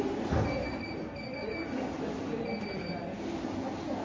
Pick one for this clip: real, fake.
real